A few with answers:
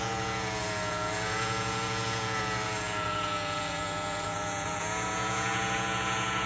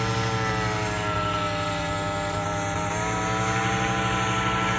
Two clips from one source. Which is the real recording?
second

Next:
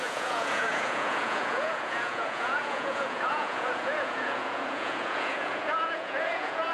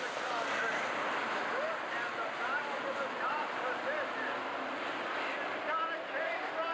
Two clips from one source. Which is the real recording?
second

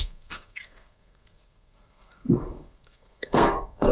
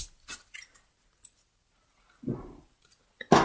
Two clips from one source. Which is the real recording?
second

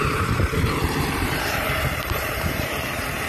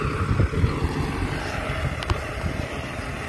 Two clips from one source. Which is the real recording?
second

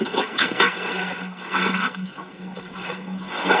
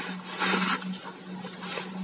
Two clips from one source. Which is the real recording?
second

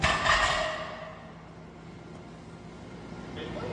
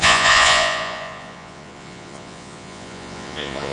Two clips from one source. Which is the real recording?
first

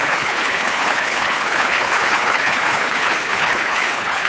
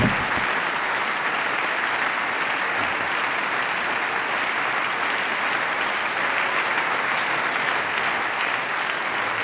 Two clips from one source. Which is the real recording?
second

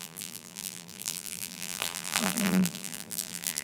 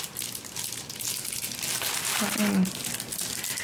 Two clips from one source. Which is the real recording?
second